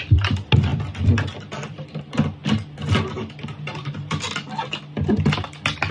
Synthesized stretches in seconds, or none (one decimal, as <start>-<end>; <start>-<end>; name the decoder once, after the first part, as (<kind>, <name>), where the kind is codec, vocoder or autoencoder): 0.7-2.0 (vocoder, BigVGAN v2)